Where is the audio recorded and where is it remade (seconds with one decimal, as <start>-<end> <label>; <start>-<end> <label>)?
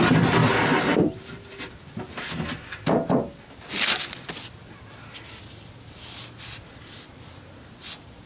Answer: 0.0-8.3 recorded